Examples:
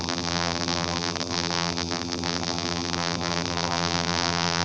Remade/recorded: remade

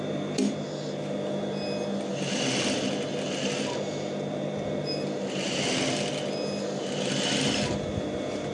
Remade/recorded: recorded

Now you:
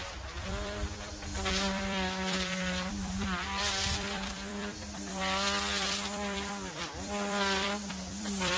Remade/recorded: remade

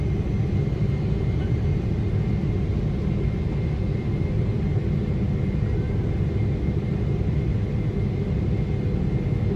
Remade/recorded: recorded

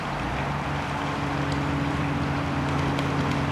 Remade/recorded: recorded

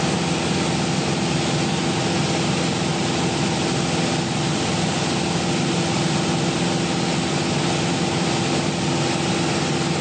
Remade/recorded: recorded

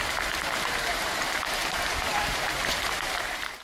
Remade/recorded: remade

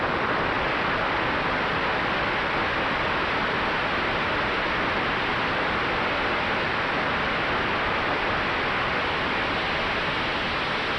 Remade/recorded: recorded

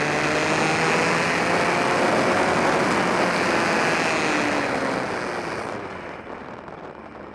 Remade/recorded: recorded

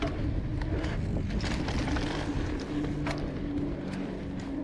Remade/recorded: recorded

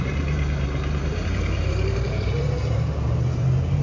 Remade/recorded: remade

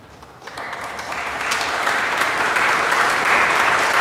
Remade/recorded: remade